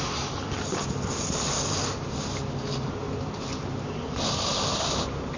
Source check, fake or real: real